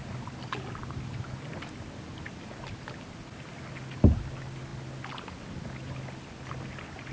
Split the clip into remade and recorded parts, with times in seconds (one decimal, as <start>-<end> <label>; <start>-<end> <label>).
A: 0.0-7.1 recorded